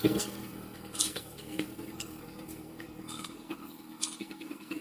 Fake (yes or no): yes